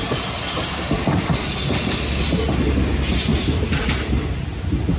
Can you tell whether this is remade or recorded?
recorded